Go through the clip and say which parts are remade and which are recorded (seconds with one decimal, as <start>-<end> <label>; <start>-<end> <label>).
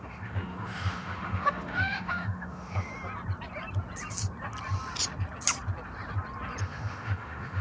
0.0-2.9 remade; 2.9-6.6 recorded; 6.6-7.6 remade